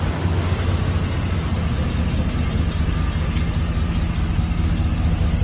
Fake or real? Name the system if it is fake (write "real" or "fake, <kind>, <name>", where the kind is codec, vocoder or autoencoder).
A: real